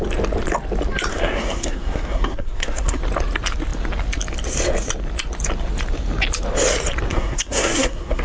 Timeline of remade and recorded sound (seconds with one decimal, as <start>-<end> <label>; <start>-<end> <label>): 0.0-1.1 recorded; 1.1-3.0 remade; 3.0-7.1 recorded; 7.1-8.2 remade